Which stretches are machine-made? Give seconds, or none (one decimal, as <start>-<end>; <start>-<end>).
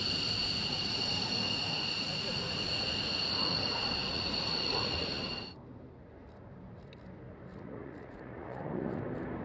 0.4-5.2; 7.5-9.0